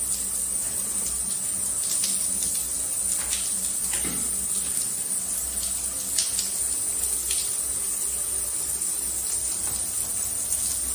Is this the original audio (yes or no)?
yes